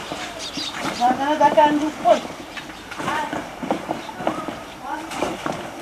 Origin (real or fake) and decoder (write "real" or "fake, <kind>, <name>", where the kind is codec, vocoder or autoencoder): fake, vocoder, BigVGAN v2